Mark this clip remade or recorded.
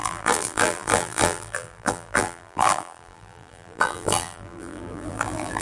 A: remade